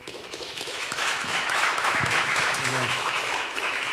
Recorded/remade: remade